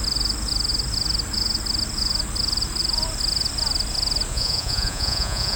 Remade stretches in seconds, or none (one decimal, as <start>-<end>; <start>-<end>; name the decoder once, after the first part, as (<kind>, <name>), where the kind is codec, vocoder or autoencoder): 4.3-5.6 (vocoder, Vocos)